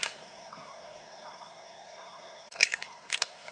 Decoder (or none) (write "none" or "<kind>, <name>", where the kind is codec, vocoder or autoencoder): codec, SNAC